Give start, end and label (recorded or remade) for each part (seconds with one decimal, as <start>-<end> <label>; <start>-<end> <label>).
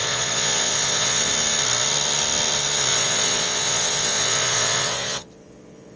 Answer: 0.0-1.3 remade; 1.3-2.9 recorded; 2.9-6.0 remade